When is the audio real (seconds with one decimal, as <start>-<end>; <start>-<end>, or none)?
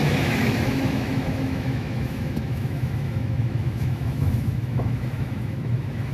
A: none